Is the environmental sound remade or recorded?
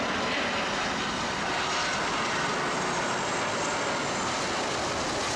recorded